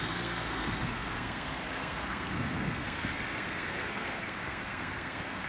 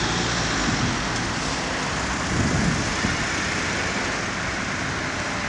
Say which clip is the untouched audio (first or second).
second